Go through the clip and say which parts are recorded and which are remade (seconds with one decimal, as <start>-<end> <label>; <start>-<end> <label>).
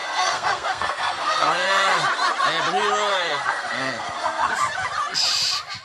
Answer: 0.0-2.0 remade; 2.0-3.1 recorded; 3.1-4.5 remade; 4.5-5.8 recorded